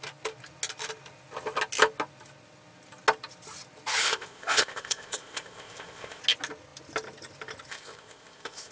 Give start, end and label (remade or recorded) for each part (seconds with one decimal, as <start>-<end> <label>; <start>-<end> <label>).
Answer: 0.0-4.0 recorded; 4.0-6.2 remade; 6.2-7.7 recorded; 7.7-8.7 remade